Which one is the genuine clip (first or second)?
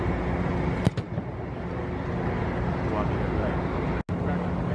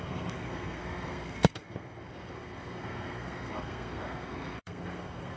first